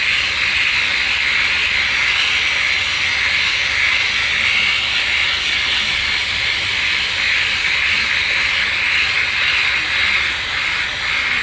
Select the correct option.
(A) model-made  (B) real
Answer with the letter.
B